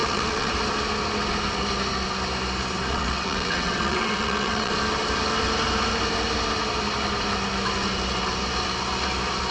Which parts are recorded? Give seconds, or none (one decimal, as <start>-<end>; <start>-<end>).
0.5-2.9; 4.7-9.5